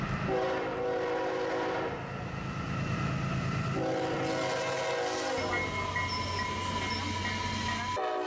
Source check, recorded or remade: recorded